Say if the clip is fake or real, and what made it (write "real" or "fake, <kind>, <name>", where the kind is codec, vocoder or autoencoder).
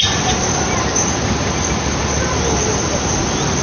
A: real